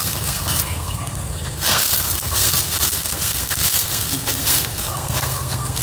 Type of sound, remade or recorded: remade